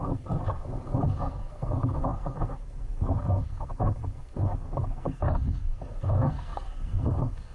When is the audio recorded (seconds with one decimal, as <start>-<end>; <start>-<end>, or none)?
none